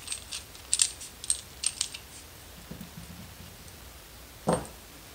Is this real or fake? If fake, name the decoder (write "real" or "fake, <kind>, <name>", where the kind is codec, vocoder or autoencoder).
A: real